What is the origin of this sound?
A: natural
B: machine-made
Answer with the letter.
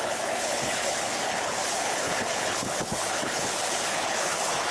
B